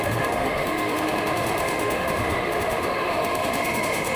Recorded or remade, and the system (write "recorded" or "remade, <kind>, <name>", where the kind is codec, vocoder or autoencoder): remade, autoencoder, DAC-VAE